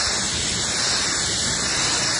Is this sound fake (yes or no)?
no